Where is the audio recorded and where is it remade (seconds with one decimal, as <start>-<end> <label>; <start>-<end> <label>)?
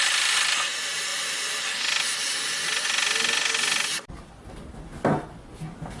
0.0-6.0 recorded